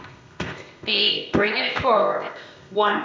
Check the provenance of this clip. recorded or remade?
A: remade